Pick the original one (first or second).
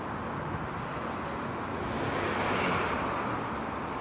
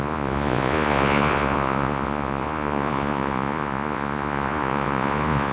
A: first